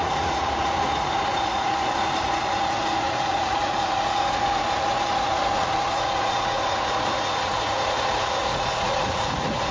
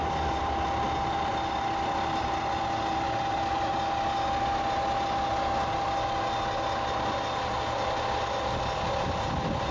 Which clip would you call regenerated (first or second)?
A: first